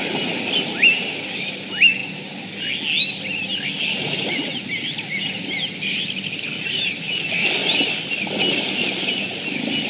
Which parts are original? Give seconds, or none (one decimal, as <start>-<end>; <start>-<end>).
0.0-9.9